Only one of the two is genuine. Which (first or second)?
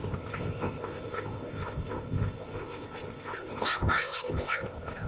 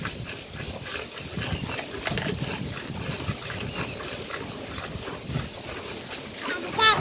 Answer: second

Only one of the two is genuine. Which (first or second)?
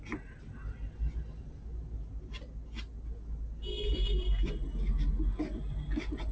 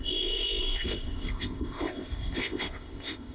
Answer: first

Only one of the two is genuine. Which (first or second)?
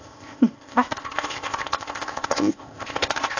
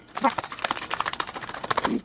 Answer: second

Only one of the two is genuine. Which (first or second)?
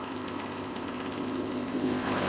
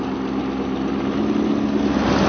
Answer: second